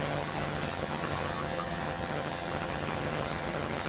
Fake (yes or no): yes